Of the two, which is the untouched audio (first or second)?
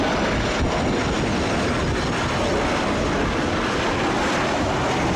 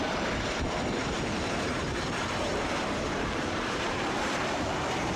first